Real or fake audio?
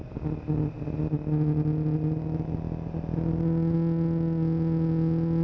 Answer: real